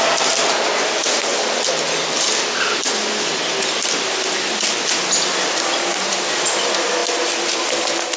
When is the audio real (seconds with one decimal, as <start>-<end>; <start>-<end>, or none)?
0.0-8.2